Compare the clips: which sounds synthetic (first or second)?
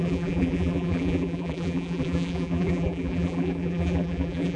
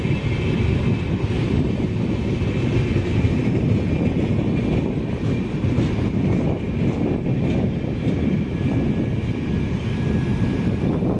first